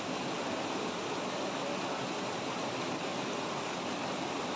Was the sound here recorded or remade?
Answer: recorded